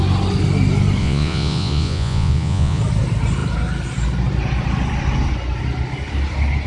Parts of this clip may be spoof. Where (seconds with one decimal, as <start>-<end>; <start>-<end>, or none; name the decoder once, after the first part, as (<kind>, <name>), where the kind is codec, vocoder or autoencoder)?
1.0-2.8 (vocoder, Vocos)